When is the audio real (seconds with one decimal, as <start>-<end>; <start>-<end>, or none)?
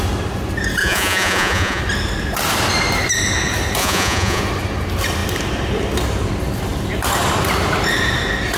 0.0-0.8; 1.8-3.8; 4.4-8.6